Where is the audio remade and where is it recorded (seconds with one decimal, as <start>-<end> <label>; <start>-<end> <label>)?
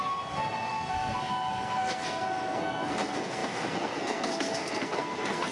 0.0-5.5 remade